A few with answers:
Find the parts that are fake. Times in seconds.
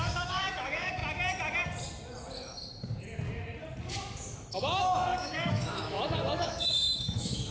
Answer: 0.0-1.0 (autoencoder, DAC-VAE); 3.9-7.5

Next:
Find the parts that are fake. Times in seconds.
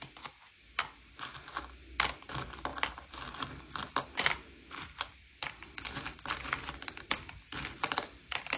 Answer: none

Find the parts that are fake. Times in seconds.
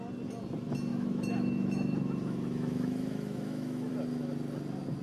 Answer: 0.9-3.9 (autoencoder, DAC-VAE)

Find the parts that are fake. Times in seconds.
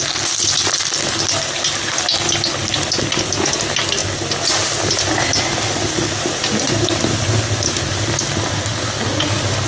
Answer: none